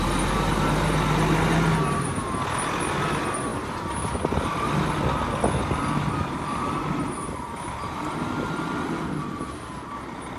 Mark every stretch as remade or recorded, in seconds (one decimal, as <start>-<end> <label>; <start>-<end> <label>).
0.0-10.4 recorded